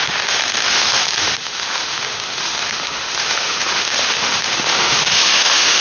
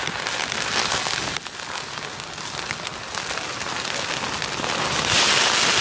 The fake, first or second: first